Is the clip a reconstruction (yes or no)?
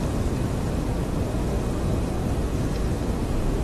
no